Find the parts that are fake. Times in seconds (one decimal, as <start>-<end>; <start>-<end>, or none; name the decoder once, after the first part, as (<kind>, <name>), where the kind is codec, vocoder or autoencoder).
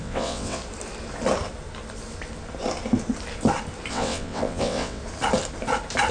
0.0-0.6 (vocoder, WaveNeXt); 3.9-5.0